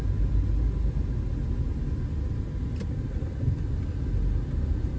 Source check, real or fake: real